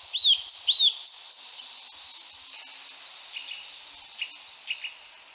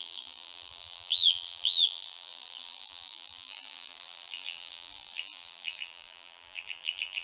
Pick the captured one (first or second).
first